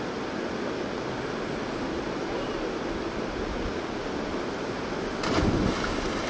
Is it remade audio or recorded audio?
recorded